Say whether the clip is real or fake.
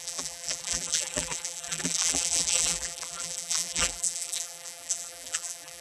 fake